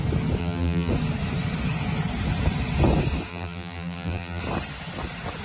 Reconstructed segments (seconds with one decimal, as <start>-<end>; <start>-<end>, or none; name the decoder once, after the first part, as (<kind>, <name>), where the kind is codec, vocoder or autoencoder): 0.4-0.9 (vocoder, BigVGAN v2); 3.3-4.4